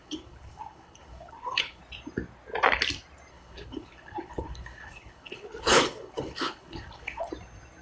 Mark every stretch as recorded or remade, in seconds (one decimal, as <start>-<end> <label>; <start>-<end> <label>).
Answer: 0.0-1.8 remade; 1.8-3.3 recorded; 3.3-7.3 remade; 7.3-7.8 recorded